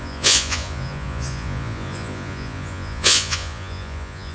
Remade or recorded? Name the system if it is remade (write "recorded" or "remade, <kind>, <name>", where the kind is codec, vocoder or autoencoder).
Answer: remade, vocoder, Vocos